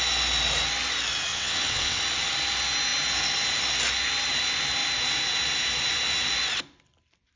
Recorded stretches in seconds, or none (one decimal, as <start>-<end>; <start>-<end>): 0.0-1.3; 2.0-7.4

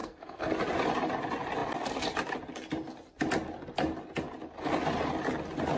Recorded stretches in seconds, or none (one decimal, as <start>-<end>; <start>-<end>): 0.5-5.8

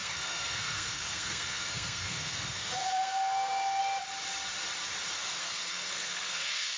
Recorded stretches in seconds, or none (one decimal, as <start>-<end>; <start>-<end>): 3.8-5.4